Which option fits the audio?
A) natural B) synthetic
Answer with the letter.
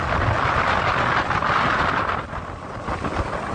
A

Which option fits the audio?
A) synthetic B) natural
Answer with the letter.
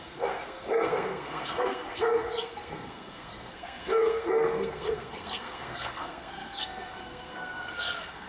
A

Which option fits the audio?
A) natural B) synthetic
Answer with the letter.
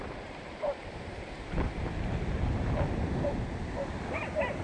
B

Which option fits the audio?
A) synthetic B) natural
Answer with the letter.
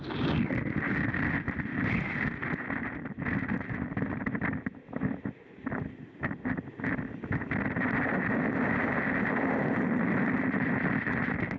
B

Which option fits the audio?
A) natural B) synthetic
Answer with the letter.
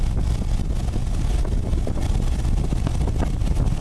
A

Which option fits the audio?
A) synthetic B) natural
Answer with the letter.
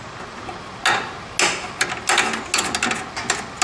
B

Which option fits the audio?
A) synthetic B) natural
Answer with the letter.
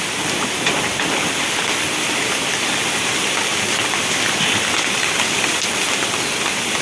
B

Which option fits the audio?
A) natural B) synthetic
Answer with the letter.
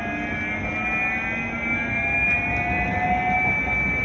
A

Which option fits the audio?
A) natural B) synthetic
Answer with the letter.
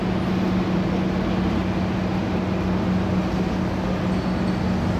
A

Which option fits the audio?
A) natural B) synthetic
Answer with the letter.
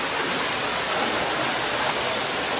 A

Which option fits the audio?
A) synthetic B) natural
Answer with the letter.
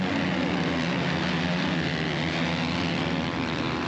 B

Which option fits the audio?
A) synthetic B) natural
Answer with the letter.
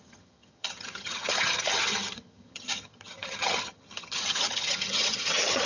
A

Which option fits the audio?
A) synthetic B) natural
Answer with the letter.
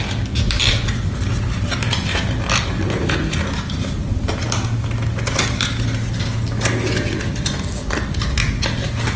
B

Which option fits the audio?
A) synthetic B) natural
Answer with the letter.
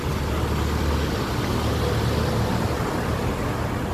B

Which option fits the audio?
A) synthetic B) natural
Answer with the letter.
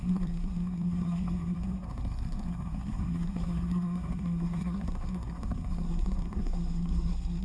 A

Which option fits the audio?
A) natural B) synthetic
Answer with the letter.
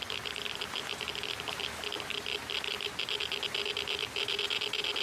A